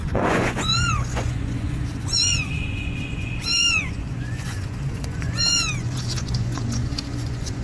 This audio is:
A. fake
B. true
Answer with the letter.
A